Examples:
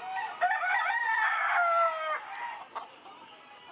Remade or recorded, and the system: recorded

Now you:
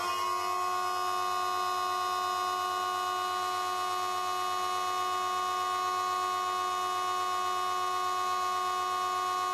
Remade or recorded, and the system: recorded